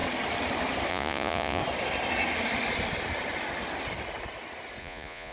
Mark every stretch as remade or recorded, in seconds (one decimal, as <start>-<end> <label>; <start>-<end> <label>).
0.0-0.9 recorded; 0.9-1.6 remade; 1.6-4.8 recorded; 4.8-5.3 remade